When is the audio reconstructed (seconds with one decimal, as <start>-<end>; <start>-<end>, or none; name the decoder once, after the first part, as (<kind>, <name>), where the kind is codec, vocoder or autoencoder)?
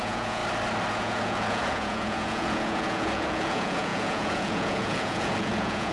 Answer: 0.0-0.4 (vocoder, Vocos); 0.9-5.9